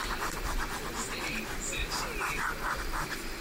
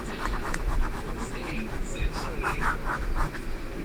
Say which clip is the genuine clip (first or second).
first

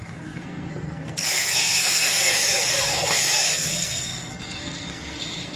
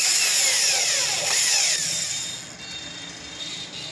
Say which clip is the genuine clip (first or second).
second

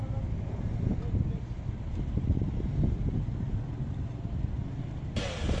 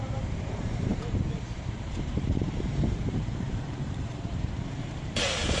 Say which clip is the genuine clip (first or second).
first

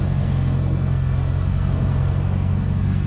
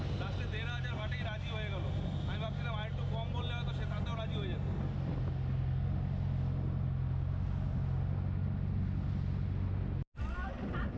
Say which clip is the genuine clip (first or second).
second